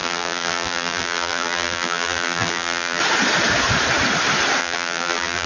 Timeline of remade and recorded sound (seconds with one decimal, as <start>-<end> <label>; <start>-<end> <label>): 0.0-3.0 remade; 3.0-4.6 recorded; 4.6-5.5 remade